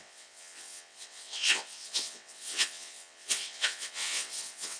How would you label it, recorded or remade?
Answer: remade